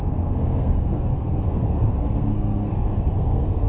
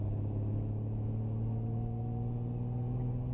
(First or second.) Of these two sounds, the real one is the second